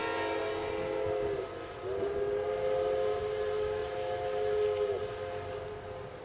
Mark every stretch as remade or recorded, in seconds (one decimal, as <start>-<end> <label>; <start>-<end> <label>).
0.0-6.2 recorded